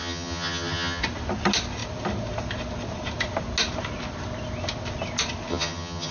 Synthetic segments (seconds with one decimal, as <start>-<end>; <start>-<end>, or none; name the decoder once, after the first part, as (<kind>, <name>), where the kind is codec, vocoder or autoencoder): 0.0-1.0 (vocoder, HiFi-GAN); 5.5-6.1